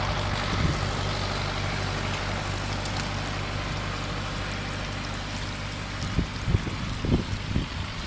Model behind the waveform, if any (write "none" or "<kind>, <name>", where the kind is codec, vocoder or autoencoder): none